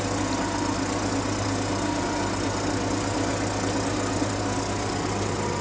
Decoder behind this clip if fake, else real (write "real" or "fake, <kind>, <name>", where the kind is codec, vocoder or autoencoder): real